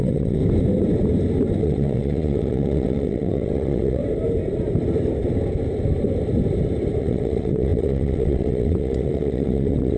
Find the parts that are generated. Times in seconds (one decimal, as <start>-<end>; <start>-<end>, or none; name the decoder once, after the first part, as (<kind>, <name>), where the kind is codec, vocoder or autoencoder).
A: 0.0-0.4 (vocoder, WaveNeXt); 1.6-4.0; 7.0-10.0